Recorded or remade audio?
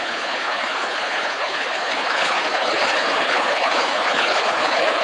remade